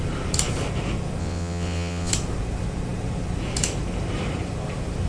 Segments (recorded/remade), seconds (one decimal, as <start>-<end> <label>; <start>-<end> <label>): 0.0-1.2 recorded; 1.2-2.1 remade; 2.1-5.1 recorded